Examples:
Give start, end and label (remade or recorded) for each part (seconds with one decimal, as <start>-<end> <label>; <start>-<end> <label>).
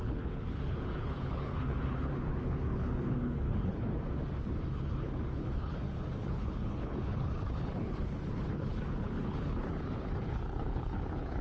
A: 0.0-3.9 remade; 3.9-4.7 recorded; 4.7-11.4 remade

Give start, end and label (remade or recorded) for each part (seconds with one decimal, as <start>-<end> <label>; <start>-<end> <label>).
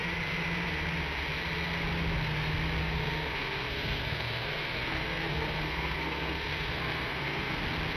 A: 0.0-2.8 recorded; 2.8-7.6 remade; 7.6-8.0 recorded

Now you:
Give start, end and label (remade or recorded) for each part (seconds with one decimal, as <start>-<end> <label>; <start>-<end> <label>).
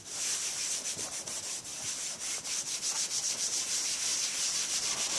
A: 0.0-5.2 recorded